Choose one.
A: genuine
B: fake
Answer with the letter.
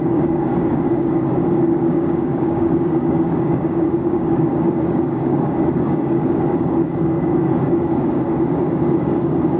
B